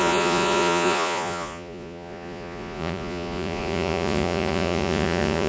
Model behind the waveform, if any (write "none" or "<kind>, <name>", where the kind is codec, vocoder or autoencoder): vocoder, Vocos